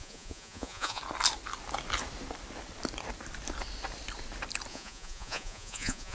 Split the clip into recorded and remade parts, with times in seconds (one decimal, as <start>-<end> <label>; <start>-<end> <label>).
0.0-1.0 remade; 1.0-4.7 recorded; 4.7-6.1 remade